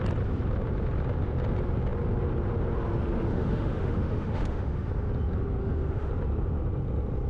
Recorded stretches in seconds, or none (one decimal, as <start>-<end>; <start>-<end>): 0.0-3.3; 4.9-5.6; 6.1-7.3